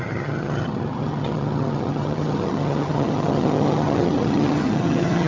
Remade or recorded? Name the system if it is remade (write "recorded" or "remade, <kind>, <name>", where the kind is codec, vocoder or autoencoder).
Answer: remade, vocoder, HiFi-GAN